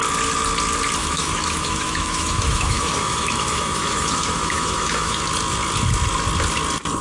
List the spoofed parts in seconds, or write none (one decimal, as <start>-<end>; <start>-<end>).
1.0-5.2